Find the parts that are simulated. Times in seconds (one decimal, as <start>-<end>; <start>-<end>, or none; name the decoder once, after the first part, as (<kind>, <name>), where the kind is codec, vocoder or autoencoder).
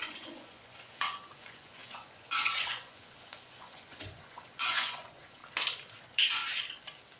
0.0-5.4 (vocoder, Vocos); 6.0-6.4